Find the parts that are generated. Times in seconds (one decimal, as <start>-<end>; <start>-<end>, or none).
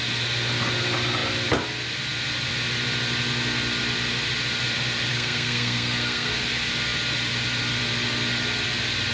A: 5.1-6.3